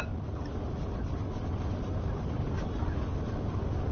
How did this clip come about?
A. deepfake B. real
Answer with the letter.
B